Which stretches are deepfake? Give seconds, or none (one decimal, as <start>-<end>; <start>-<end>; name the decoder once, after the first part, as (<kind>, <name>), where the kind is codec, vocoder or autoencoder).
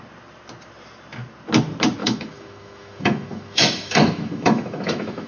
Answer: 2.0-5.3 (autoencoder, DAC-VAE)